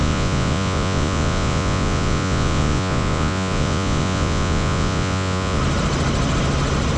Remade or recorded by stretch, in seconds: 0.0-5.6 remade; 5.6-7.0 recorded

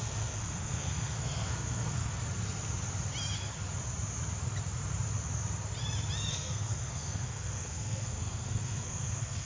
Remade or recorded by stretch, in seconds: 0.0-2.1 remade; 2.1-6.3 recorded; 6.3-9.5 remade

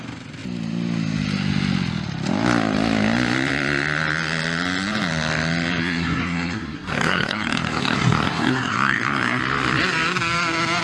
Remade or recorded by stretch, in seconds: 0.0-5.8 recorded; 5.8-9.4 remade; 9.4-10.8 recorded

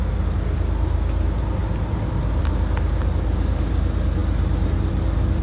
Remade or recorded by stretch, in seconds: 0.0-5.4 recorded

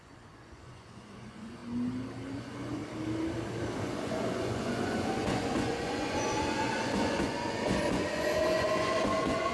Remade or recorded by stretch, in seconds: 0.0-1.6 remade; 1.6-2.4 recorded; 2.4-2.8 remade; 2.8-3.8 recorded; 3.8-9.5 remade

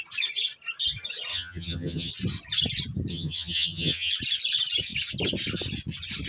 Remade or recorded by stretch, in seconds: 0.0-1.3 recorded; 1.3-2.1 remade; 2.1-3.1 recorded; 3.1-4.1 remade; 4.1-6.3 recorded

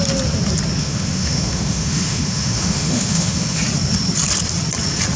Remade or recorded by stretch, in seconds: 0.0-0.8 recorded; 0.8-3.6 remade; 3.6-5.2 recorded

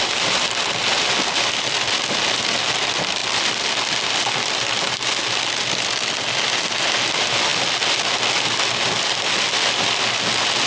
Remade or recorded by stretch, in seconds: 0.0-10.7 recorded